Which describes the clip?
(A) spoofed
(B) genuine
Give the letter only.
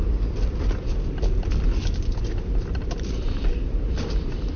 A